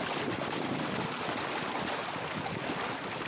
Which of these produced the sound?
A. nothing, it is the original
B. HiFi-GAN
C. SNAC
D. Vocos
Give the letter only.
A